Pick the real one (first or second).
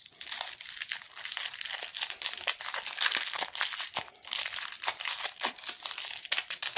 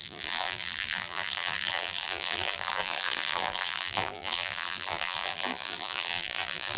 first